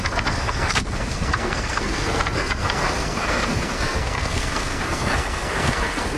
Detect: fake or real fake